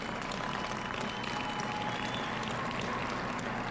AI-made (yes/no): no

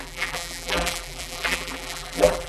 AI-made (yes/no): yes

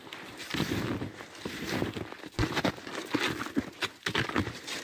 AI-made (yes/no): no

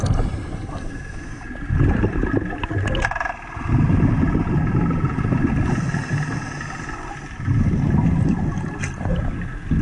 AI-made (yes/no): no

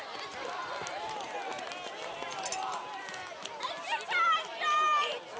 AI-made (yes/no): no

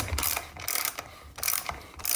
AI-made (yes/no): yes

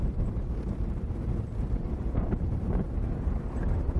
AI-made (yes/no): yes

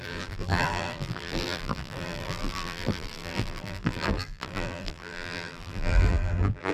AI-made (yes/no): yes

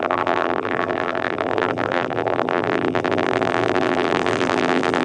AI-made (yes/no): yes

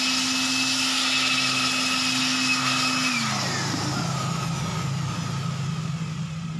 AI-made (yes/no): no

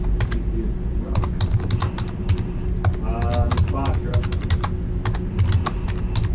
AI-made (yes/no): no